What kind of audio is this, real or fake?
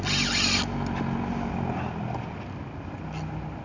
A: real